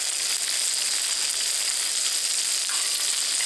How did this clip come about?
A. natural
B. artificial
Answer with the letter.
A